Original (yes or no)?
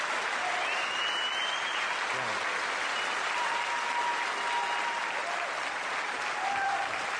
yes